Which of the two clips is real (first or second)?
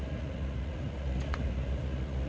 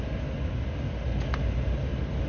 second